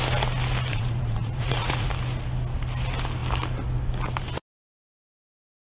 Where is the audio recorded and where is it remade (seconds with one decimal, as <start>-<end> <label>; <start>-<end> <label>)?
0.0-0.7 recorded; 0.7-1.9 remade; 1.9-5.7 recorded

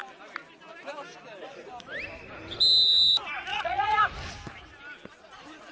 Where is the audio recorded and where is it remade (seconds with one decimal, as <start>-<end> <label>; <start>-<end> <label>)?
0.0-3.5 recorded; 3.5-4.0 remade; 4.0-5.7 recorded

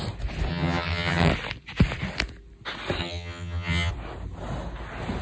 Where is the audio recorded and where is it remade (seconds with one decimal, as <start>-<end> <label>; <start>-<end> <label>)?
0.0-0.5 recorded; 0.5-1.3 remade; 1.3-3.0 recorded; 3.0-3.9 remade; 3.9-5.2 recorded

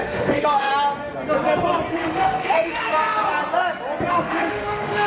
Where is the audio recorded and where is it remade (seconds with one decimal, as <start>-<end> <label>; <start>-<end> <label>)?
0.0-0.7 remade; 0.7-1.9 recorded; 1.9-3.0 remade; 3.0-4.1 recorded; 4.1-5.1 remade

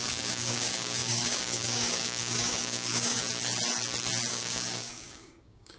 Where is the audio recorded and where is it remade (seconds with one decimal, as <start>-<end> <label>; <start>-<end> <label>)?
0.0-3.2 remade; 3.2-4.3 recorded; 4.3-5.8 remade

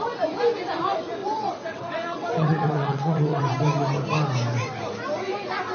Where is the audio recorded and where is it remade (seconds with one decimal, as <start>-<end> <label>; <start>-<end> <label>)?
0.0-1.2 recorded; 1.2-3.4 remade; 3.4-5.7 recorded

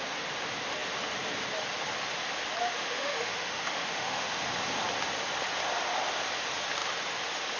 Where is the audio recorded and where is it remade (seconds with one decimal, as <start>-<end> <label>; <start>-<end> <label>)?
0.0-2.7 recorded; 2.7-4.4 remade; 4.4-7.6 recorded

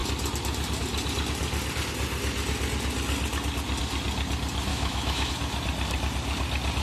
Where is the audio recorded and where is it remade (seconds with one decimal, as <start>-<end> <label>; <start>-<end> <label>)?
0.0-4.7 recorded; 4.7-5.3 remade; 5.3-6.8 recorded